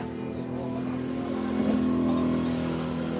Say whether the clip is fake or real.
real